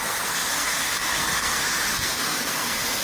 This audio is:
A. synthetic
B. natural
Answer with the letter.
A